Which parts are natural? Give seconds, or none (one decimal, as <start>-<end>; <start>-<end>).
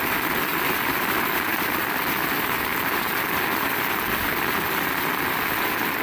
0.0-6.0